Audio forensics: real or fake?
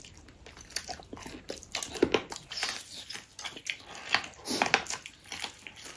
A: real